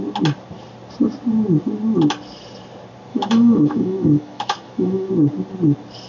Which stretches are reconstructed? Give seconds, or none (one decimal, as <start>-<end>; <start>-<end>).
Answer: 3.1-5.1